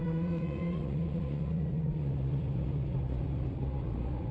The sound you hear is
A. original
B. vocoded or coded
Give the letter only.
B